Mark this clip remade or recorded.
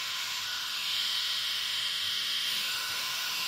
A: remade